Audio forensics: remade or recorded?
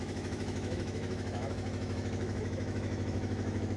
remade